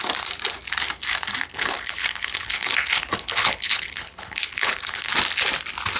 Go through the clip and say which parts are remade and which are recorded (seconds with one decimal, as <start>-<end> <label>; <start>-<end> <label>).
0.0-1.5 recorded; 1.5-5.1 remade; 5.1-6.0 recorded